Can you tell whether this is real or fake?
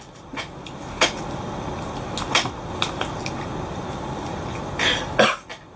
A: real